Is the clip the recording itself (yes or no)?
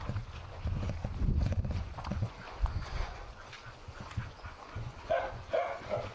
no